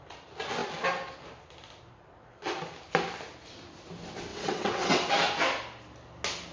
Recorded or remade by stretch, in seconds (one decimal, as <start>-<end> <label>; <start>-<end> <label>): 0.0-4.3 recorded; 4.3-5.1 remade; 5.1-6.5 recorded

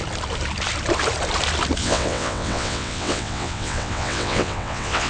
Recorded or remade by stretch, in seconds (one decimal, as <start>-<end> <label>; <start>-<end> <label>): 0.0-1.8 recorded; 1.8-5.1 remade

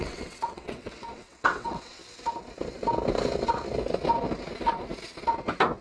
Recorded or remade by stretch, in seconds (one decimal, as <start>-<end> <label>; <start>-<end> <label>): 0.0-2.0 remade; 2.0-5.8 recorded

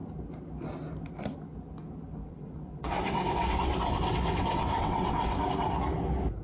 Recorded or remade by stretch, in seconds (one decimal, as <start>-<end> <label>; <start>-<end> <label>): 0.0-2.2 recorded; 2.2-5.4 remade; 5.4-6.4 recorded

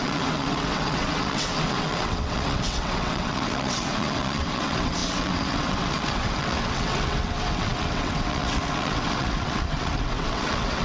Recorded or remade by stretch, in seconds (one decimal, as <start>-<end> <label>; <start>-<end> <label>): 0.0-10.8 remade